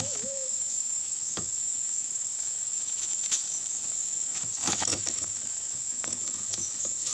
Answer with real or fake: fake